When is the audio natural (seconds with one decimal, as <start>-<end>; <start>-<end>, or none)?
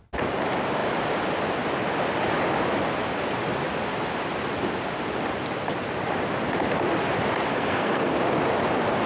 0.0-7.5; 8.1-9.1